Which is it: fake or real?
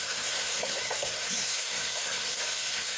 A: fake